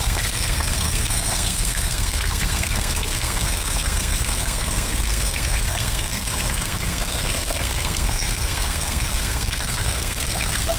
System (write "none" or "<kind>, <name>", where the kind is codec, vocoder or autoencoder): codec, SNAC